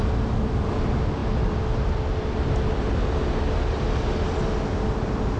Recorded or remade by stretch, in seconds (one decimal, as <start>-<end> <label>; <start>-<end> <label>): 0.0-5.4 remade